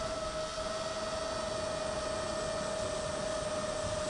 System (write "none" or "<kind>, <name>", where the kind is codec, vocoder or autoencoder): none